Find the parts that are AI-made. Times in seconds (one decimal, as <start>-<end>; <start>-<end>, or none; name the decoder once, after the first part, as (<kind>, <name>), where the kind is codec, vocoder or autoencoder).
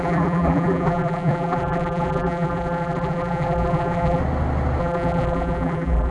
0.0-4.2 (vocoder, BigVGAN v2); 4.8-6.1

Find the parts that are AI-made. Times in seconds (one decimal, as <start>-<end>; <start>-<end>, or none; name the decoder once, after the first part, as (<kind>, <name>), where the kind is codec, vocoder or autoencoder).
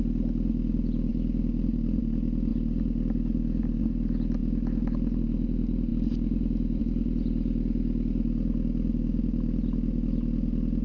none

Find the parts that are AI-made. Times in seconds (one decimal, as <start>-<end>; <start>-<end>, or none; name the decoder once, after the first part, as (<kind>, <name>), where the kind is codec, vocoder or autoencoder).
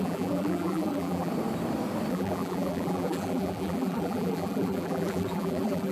0.0-1.3 (vocoder, BigVGAN v2); 2.1-5.9